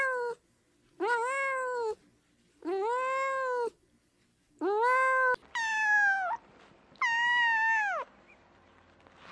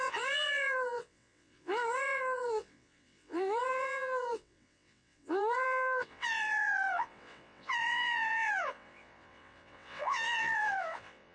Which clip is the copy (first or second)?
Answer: second